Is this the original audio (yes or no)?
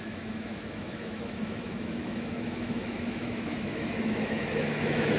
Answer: no